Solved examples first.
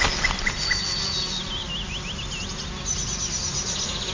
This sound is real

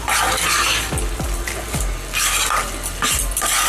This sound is real